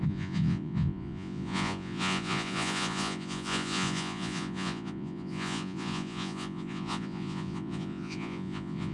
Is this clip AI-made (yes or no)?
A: yes